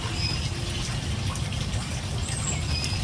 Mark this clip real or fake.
real